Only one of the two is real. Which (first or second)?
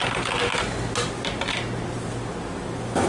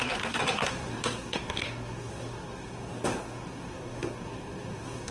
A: first